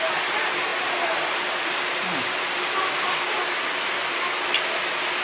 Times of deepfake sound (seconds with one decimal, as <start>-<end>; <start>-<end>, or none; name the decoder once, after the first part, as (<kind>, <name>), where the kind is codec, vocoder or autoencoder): none